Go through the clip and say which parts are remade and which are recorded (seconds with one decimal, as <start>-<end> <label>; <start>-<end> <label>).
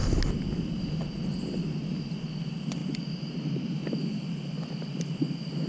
0.0-5.7 recorded